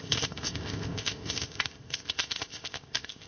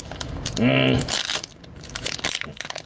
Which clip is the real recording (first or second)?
second